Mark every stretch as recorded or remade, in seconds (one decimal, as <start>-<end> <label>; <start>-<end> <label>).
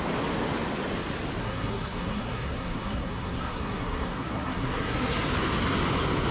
0.0-1.4 recorded; 1.4-5.2 remade; 5.2-6.3 recorded